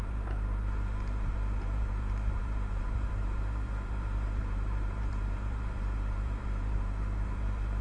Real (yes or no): no